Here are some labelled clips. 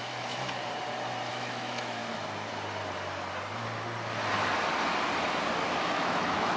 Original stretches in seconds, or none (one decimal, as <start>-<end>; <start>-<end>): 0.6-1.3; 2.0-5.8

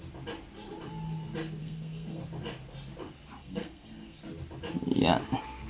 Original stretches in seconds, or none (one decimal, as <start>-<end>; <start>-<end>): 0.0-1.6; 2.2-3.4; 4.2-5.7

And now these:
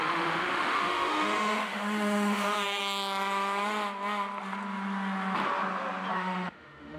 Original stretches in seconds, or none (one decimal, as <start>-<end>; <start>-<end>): 2.8-6.1